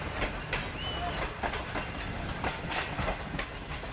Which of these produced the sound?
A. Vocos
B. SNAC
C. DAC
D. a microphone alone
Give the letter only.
D